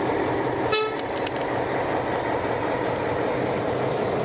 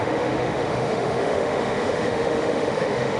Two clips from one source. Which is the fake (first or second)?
second